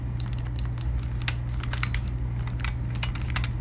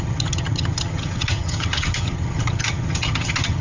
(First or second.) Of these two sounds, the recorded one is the first